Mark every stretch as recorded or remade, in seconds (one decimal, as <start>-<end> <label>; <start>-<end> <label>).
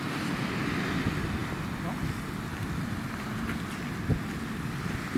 0.0-5.2 recorded